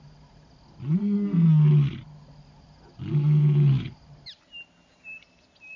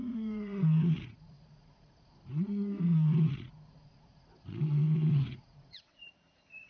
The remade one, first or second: second